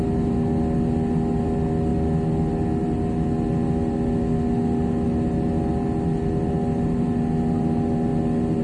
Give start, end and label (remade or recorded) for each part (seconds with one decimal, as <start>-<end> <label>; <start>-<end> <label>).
0.0-8.6 recorded